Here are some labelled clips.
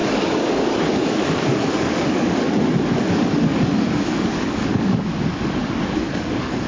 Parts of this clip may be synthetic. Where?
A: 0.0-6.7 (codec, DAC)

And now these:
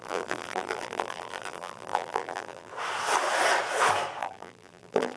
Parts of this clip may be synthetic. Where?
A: 0.0-2.7 (vocoder, BigVGAN v2); 4.2-5.2

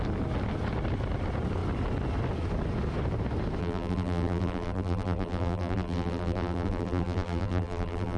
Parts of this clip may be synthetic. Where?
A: 3.6-8.2 (vocoder, BigVGAN v2)

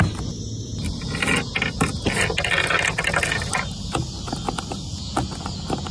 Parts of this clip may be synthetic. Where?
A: 4.9-5.4 (vocoder, Vocos)

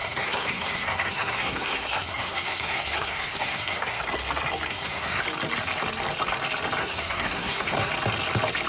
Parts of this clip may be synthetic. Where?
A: 0.0-4.0 (codec, SNAC); 4.7-5.2; 6.8-7.9

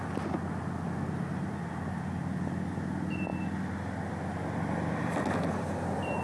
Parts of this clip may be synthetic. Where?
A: none